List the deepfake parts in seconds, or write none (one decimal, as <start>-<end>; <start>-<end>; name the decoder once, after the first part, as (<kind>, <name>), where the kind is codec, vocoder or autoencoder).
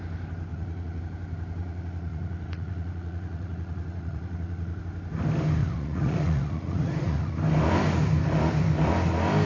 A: 0.5-1.0 (vocoder, Vocos); 1.6-4.8; 5.6-7.3